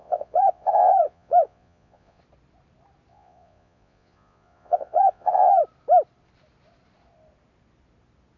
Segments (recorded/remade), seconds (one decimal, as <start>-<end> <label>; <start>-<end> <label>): 0.0-2.2 remade; 2.2-3.1 recorded; 3.1-5.6 remade; 5.6-8.4 recorded